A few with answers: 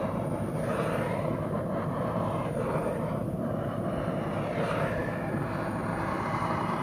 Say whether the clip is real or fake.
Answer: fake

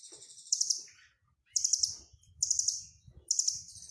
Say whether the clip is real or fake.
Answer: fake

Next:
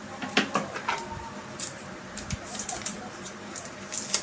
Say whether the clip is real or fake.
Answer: fake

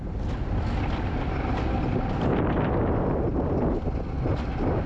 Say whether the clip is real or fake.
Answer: real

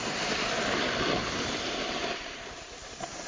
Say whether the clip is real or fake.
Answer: real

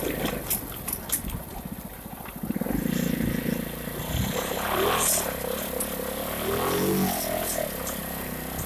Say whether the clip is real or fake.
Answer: real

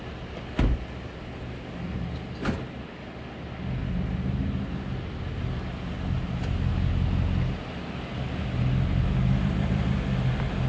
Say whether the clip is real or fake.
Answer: real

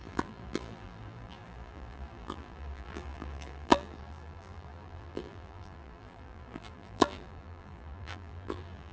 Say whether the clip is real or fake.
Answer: fake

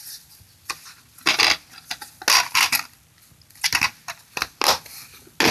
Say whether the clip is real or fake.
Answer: real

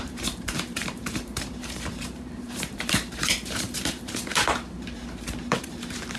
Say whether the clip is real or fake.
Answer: fake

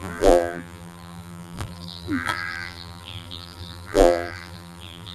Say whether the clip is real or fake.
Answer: fake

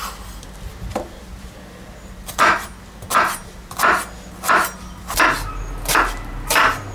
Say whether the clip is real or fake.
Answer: real